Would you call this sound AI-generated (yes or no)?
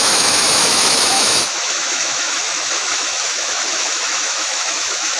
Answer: yes